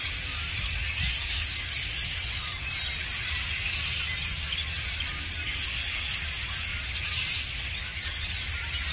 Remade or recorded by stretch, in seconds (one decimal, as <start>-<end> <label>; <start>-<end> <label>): 0.0-8.9 recorded